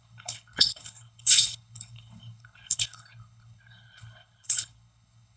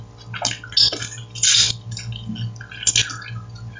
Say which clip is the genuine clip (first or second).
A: second